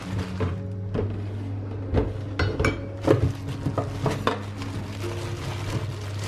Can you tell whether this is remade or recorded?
recorded